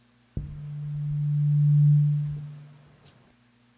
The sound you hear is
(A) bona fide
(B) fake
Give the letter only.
A